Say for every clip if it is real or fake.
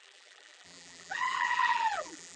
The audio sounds fake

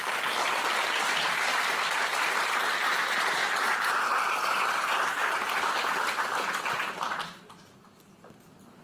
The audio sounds real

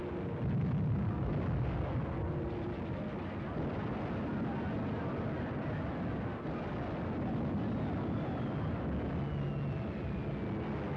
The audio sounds real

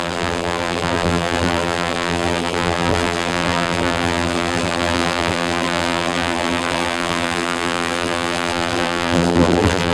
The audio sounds fake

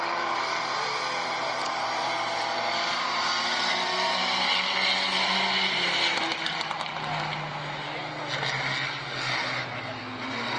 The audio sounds real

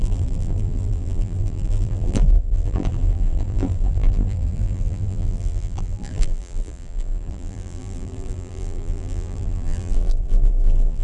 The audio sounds fake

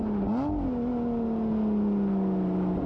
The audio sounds real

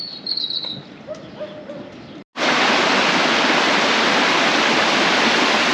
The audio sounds real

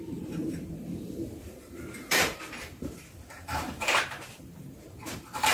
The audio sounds fake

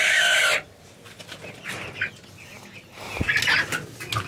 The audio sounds real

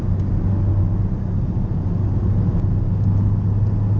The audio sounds real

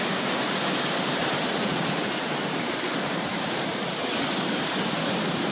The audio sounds fake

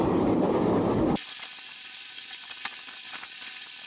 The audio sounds real